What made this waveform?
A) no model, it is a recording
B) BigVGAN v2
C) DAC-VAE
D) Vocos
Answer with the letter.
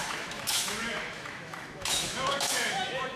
C